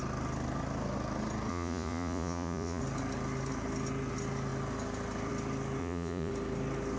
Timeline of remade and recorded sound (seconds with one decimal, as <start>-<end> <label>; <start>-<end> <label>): 0.0-1.5 recorded; 1.5-2.8 remade; 2.8-5.8 recorded; 5.8-6.3 remade; 6.3-7.0 recorded

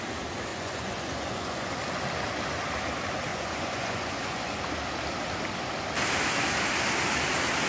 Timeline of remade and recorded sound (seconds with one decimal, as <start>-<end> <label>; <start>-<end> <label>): 0.0-0.5 recorded; 0.5-1.7 remade; 1.7-3.3 recorded; 3.3-4.6 remade; 4.6-7.7 recorded

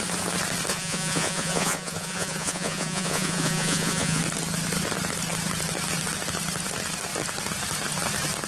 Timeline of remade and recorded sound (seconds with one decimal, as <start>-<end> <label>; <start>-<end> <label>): 0.0-0.7 recorded; 0.7-4.2 remade; 4.2-8.5 recorded